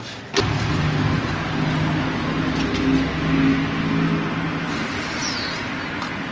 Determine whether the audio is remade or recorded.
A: recorded